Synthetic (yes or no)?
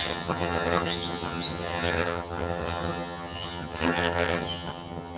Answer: yes